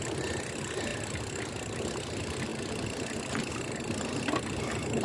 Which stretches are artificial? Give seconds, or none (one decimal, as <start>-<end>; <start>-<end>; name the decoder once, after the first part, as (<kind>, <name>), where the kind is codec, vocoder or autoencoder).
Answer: none